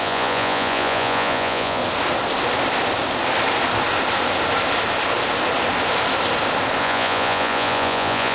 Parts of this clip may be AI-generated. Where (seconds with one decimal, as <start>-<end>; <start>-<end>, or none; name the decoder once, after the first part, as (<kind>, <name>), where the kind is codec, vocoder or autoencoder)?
0.0-1.8 (vocoder, Vocos); 6.8-8.3